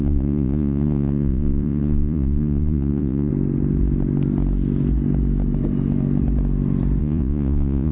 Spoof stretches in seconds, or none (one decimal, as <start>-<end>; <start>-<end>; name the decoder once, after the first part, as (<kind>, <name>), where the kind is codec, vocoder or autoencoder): 0.0-3.3 (vocoder, Vocos); 7.0-7.9